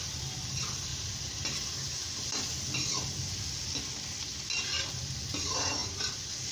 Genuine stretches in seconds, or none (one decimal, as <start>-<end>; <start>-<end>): 0.0-6.5